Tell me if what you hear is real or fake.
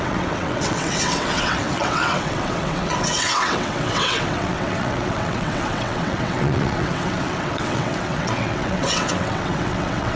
fake